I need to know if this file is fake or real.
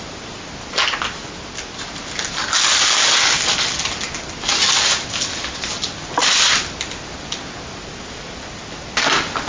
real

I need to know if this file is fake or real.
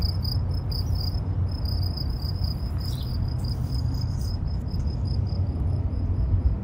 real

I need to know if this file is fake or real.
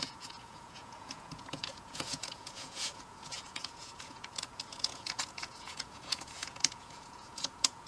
fake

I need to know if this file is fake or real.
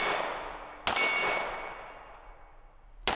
real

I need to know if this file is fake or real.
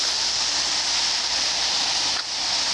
real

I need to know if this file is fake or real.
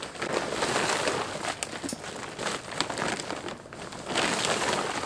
real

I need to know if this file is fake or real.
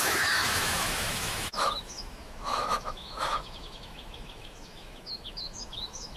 fake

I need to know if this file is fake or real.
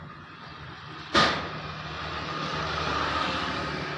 real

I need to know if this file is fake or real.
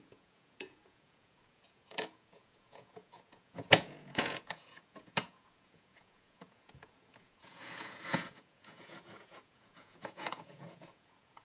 fake